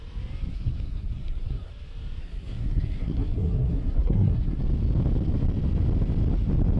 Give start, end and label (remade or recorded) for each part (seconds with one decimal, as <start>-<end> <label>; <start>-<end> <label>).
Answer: 0.0-0.5 recorded; 0.5-1.7 remade; 1.7-2.2 recorded; 2.2-4.6 remade; 4.6-6.8 recorded